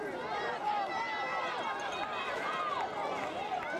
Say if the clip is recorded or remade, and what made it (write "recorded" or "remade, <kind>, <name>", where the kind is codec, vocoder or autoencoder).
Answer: recorded